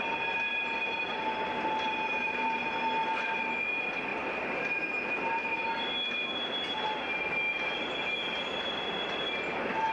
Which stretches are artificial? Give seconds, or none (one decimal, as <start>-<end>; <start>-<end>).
none

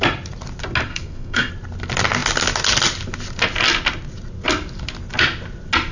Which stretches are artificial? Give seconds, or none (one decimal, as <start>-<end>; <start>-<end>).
0.9-1.5